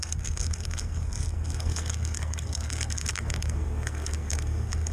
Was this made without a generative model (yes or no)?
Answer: no